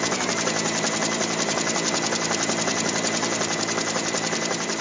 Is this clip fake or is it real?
fake